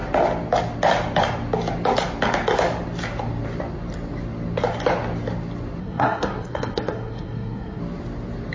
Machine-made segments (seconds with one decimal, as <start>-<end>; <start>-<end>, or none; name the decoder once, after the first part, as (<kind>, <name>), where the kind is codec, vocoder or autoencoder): 5.8-7.8 (codec, SNAC)